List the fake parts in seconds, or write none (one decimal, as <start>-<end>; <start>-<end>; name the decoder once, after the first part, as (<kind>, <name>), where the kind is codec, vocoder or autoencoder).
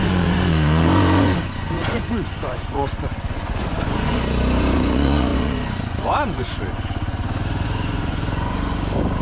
0.0-9.2 (vocoder, Vocos)